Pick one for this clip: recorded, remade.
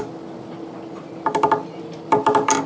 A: recorded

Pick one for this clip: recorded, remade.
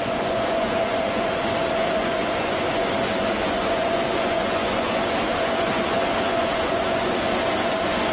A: remade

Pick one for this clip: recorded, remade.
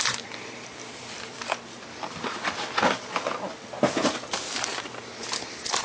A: recorded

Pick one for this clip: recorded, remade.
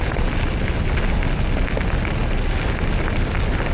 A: recorded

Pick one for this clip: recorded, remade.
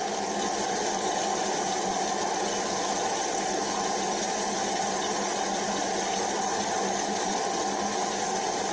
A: recorded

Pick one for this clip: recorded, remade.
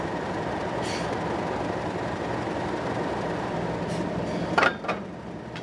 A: recorded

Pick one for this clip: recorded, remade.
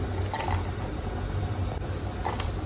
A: recorded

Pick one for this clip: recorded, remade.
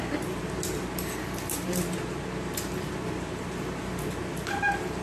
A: recorded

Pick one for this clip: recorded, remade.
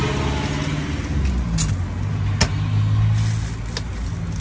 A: recorded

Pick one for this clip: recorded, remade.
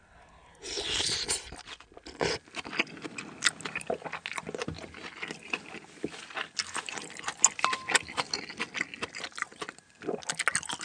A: recorded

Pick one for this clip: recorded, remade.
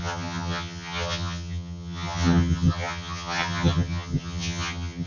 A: remade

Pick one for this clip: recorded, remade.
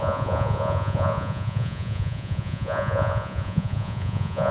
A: remade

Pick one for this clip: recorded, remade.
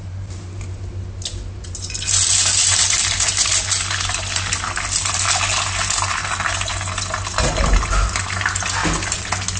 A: recorded